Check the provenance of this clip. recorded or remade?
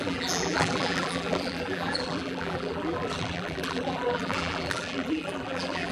remade